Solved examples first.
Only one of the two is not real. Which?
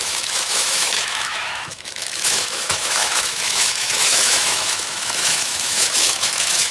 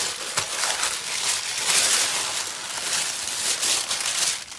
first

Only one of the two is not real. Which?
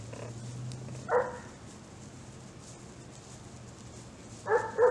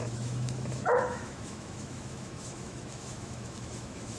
second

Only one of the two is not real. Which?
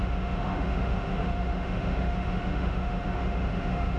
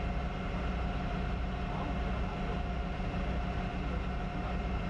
first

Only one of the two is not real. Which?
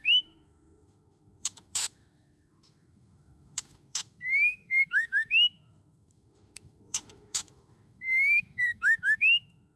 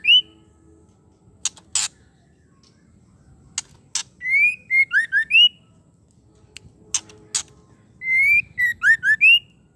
first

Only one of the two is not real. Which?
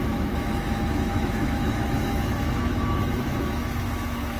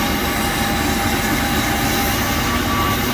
first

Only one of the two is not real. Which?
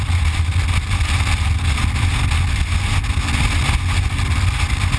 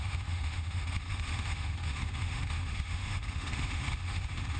second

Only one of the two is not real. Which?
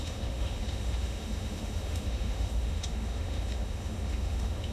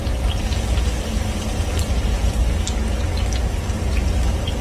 first